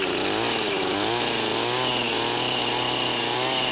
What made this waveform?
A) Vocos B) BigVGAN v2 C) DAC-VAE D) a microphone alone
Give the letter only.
D